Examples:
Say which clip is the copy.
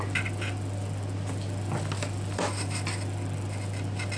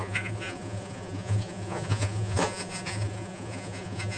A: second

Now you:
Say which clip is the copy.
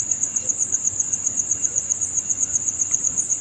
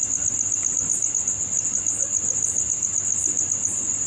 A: first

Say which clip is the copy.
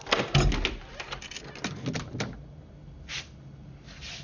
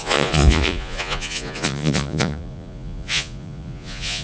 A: second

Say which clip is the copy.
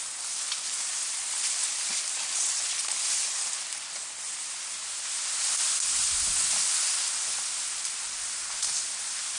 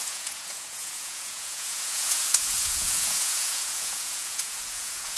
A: second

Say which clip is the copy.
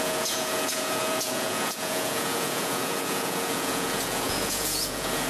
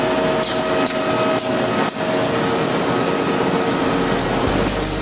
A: first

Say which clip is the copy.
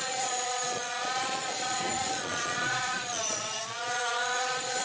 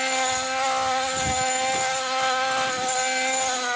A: first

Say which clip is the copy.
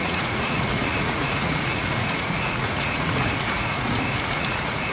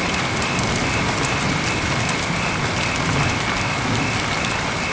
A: first